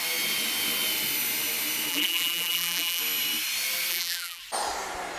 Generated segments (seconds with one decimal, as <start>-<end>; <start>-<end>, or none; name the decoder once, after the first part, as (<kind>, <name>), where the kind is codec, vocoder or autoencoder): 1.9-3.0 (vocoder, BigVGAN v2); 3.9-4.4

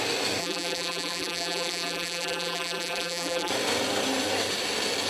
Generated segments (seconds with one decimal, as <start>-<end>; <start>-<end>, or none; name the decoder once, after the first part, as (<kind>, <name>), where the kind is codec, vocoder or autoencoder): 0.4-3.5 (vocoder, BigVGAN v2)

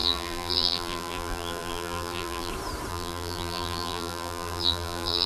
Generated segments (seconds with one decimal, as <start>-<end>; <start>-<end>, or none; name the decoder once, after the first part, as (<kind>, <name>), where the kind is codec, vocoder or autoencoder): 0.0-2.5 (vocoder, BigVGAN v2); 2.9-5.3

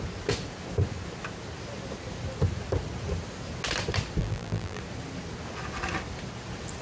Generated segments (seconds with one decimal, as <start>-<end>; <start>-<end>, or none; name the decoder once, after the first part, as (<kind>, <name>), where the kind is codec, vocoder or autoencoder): 4.2-4.8 (vocoder, BigVGAN v2)

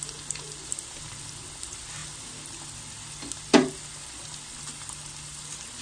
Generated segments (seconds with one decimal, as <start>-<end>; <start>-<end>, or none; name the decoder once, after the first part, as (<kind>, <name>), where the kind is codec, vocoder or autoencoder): 0.0-5.8 (vocoder, BigVGAN v2)

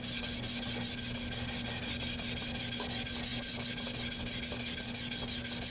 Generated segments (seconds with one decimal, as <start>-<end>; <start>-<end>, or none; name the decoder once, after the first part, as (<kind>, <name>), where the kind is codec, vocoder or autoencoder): none